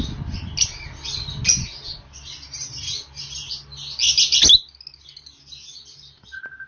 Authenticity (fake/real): real